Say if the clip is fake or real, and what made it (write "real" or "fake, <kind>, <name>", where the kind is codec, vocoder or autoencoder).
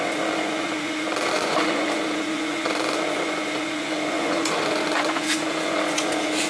fake, vocoder, Vocos